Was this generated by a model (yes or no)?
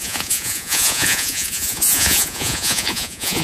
yes